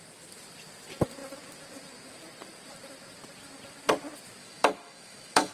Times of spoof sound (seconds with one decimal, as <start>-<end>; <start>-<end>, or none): 4.4-5.5